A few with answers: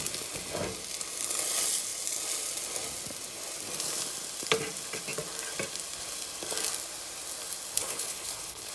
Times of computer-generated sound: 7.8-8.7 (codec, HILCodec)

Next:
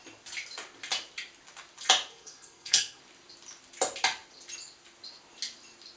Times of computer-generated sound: 2.1-3.0 (codec, SNAC)

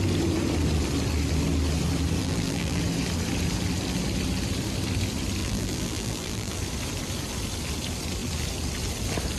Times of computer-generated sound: 2.2-2.8 (vocoder, BigVGAN v2); 5.4-6.6

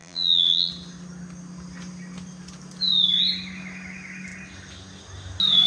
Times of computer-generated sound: 0.0-0.7 (vocoder, BigVGAN v2)

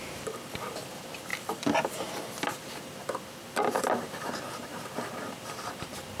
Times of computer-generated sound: none

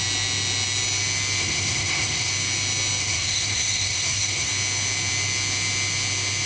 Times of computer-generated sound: 1.4-2.3 (codec, SNAC); 3.0-4.5

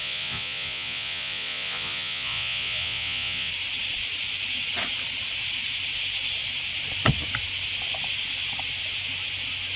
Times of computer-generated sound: 0.0-3.5 (vocoder, Vocos)

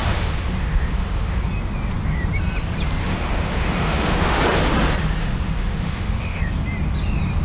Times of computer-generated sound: 0.0-1.4 (autoencoder, DAC-VAE); 3.0-4.4; 5.2-6.4